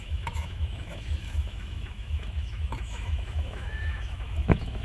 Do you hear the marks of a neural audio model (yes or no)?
yes